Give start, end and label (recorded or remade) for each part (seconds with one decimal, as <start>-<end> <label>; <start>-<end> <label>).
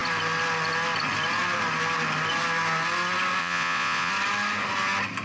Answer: 0.0-3.4 recorded; 3.4-4.1 remade; 4.1-5.2 recorded